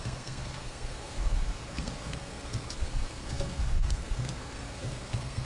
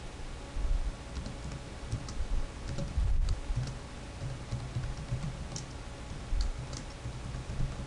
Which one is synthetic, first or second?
first